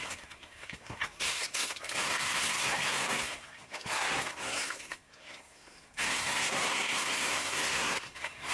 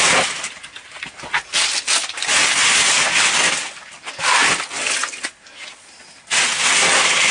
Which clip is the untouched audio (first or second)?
second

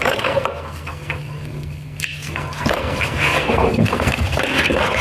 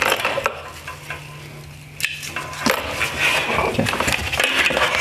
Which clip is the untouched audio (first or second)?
second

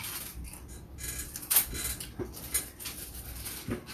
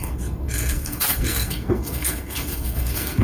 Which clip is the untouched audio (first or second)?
first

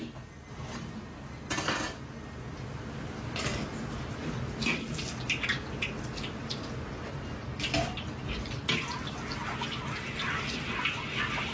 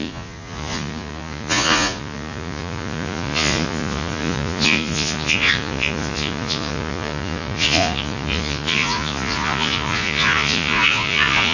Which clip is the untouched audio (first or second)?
first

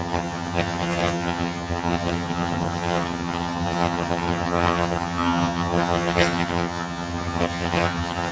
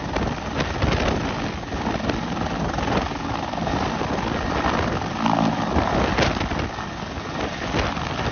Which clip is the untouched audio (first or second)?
second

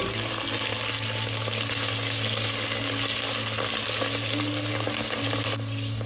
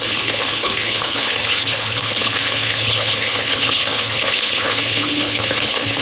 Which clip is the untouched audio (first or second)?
first